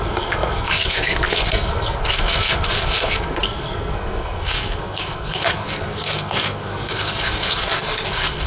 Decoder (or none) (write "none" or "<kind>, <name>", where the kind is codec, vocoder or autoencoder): codec, SNAC